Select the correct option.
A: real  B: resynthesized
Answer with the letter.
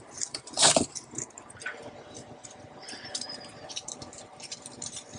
B